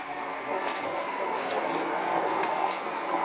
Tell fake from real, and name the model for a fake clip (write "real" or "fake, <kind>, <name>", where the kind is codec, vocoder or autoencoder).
fake, codec, SNAC